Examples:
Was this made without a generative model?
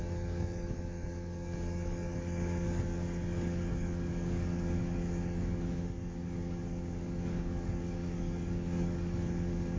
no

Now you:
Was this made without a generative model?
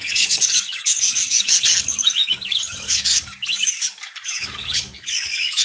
no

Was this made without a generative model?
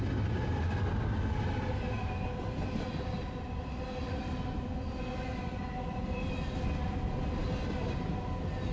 yes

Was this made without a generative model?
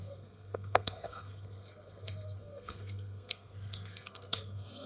no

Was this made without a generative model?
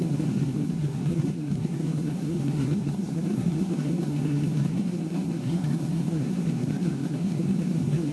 no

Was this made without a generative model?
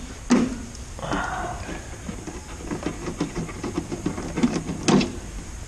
yes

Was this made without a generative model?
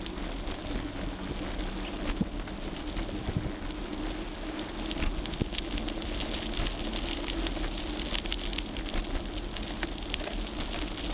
yes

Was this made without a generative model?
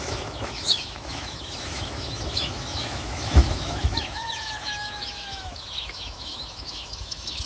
no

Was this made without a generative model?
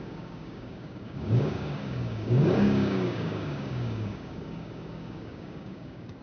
no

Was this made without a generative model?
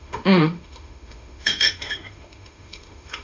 no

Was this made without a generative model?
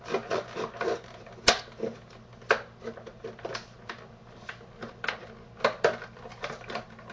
yes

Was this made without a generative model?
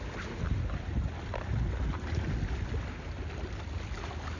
yes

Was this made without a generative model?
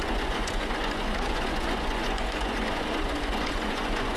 no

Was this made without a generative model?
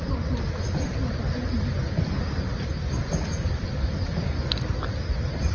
yes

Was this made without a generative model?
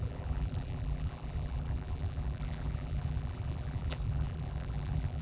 no